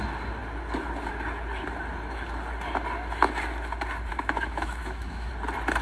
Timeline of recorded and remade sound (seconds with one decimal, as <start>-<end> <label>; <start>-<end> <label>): 0.0-4.1 recorded; 4.1-5.3 remade; 5.3-5.8 recorded